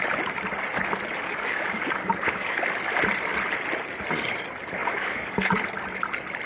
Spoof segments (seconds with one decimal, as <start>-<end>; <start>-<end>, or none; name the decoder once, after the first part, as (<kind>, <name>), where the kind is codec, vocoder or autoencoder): 1.2-2.9 (codec, DAC); 4.8-5.5